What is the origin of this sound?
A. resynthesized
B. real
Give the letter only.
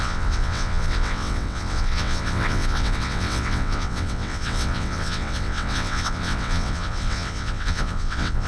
A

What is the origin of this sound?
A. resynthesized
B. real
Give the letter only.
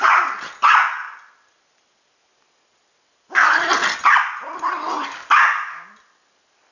B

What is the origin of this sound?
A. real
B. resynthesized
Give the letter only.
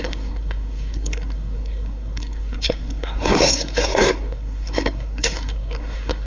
B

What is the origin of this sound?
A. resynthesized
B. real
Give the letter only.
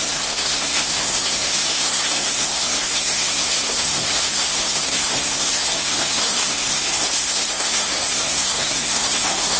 A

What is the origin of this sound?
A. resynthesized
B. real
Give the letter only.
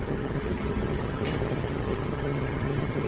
A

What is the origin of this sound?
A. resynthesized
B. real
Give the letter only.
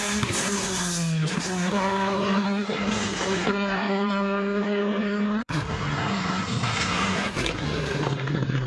A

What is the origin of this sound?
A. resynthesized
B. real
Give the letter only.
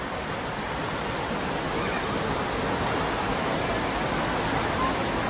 B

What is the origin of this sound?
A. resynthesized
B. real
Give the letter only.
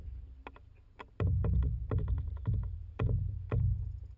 A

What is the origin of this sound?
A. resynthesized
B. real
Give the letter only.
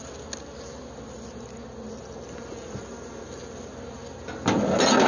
B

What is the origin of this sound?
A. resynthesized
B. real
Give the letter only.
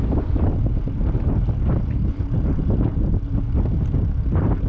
B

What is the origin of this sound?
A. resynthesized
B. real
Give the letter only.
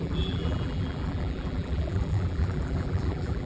A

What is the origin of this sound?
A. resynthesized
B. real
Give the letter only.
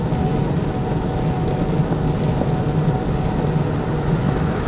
B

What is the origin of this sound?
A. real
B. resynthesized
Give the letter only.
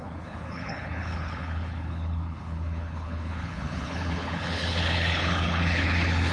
B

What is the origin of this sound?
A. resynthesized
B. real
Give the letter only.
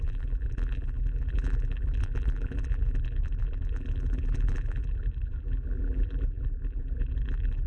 A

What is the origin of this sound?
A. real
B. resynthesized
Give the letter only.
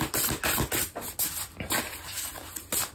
A